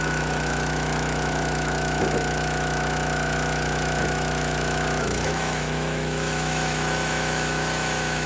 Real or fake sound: fake